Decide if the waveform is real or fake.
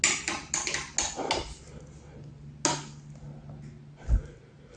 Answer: real